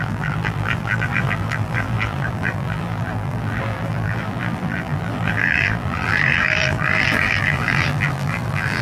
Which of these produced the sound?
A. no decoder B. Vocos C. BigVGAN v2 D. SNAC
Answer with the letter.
C